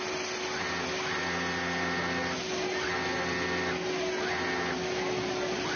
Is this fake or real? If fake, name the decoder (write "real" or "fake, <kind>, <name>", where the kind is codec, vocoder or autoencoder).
real